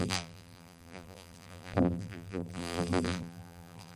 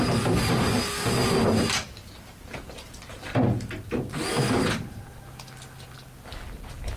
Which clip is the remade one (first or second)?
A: first